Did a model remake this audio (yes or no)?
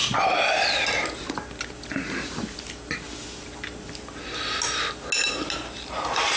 no